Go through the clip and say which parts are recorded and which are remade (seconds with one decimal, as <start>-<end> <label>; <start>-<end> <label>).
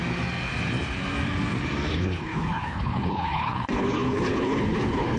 0.0-1.9 recorded; 1.9-5.2 remade